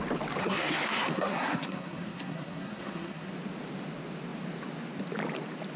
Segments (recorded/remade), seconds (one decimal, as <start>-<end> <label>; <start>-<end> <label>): 0.0-0.4 recorded; 0.4-3.3 remade; 3.3-5.8 recorded